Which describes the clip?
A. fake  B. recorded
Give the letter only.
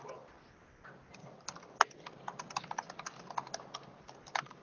B